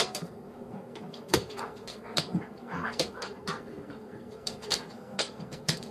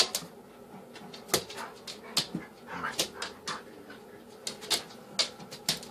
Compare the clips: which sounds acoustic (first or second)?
second